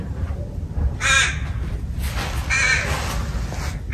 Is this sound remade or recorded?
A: recorded